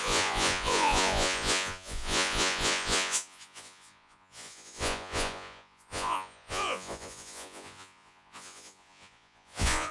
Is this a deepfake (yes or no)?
yes